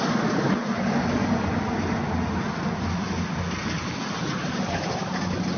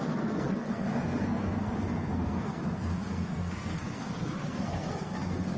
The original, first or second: first